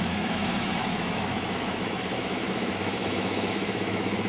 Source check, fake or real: fake